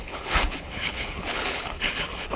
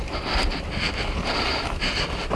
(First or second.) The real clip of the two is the second